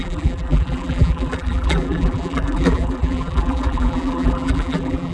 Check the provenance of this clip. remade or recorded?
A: remade